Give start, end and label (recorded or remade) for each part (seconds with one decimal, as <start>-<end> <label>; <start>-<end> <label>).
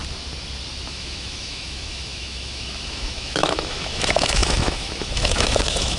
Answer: 0.0-0.9 recorded; 0.9-6.0 remade